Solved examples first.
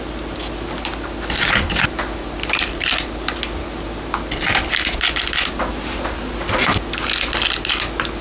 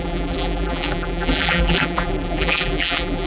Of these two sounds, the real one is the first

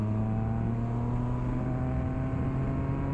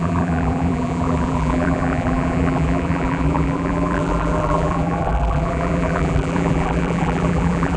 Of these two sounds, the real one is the first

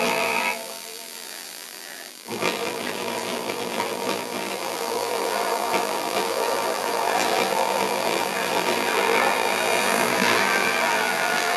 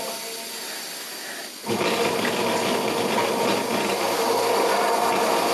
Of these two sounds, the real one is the second